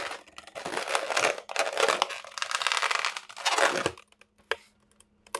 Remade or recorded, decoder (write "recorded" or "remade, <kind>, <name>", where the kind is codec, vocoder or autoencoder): recorded